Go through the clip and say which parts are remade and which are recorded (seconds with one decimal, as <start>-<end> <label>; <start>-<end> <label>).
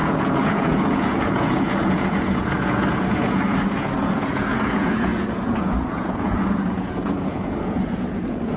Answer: 0.0-8.6 remade